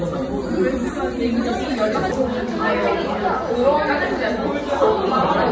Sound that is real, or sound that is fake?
real